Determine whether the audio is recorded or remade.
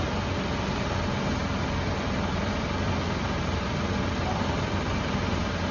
recorded